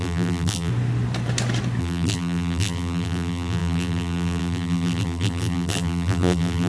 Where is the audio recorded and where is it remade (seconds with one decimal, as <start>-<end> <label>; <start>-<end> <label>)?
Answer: 0.0-0.7 remade; 0.7-1.8 recorded; 1.8-6.7 remade